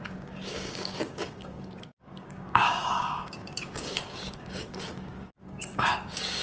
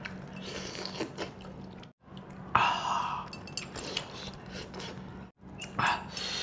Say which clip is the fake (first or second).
first